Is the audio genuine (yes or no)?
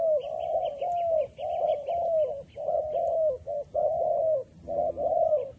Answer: yes